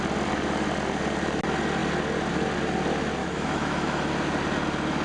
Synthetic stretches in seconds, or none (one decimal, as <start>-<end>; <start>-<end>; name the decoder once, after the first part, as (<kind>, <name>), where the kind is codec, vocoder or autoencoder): 3.2-4.1 (autoencoder, DAC-VAE)

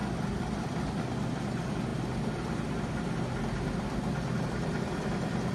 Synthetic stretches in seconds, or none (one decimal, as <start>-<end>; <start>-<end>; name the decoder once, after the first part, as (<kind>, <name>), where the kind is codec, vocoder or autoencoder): none

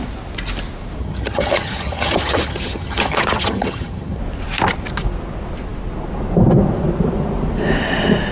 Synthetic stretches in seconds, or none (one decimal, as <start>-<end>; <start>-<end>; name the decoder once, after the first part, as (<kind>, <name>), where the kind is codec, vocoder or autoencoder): 1.0-4.2 (vocoder, HiFi-GAN)

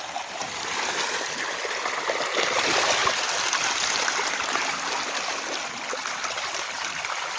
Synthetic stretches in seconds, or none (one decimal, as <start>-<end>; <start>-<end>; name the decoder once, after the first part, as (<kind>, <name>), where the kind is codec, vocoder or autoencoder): none

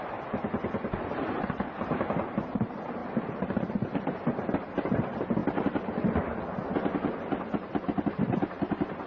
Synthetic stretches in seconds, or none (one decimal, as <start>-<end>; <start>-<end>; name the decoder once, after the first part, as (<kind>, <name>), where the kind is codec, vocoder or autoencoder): 0.0-3.0 (vocoder, BigVGAN v2); 3.7-5.4; 8.1-9.1